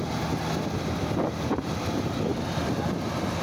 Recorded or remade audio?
recorded